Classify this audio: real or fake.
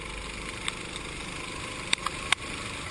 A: fake